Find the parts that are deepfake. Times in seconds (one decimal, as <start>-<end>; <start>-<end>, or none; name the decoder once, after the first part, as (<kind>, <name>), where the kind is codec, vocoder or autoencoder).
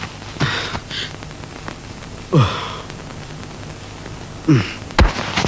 none